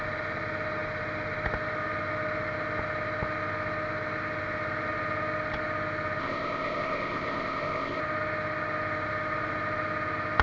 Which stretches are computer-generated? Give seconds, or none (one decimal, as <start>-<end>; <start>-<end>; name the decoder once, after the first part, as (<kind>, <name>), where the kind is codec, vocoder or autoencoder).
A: 6.2-8.0 (codec, ZipCodec)